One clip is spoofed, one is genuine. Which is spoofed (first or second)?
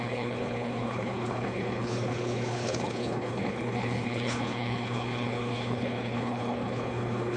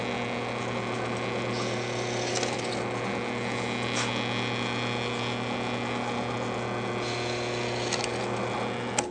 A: first